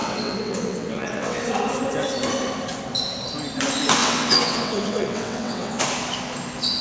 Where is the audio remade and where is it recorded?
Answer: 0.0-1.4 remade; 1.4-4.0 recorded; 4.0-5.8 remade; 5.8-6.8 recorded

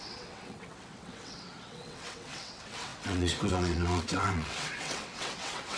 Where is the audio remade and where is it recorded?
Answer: 0.0-5.8 remade

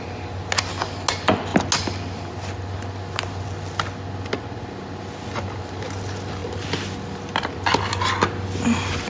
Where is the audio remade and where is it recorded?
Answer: 0.0-9.1 recorded

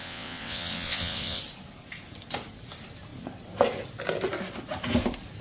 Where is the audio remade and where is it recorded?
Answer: 0.0-1.4 remade; 1.4-5.4 recorded

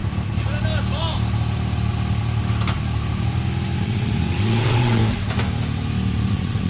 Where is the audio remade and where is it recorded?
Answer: 0.0-3.8 recorded; 3.8-5.0 remade; 5.0-6.3 recorded; 6.3-6.7 remade